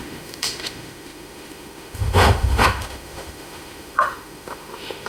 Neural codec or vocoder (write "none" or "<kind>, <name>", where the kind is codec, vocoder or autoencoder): autoencoder, DAC-VAE